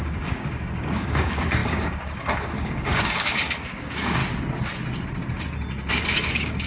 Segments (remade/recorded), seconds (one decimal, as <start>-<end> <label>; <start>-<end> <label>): 0.0-4.2 remade; 4.2-5.9 recorded; 5.9-6.7 remade